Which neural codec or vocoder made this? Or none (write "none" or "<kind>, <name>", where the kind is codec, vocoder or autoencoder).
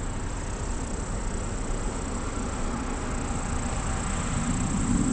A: none